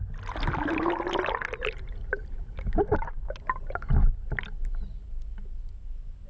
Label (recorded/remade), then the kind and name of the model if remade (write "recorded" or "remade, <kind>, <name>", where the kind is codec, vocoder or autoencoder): recorded